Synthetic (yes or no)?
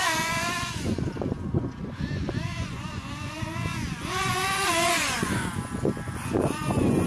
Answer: yes